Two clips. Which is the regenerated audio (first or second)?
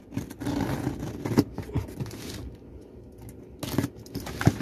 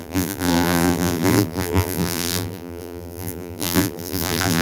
second